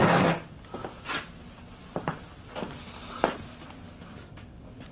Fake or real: real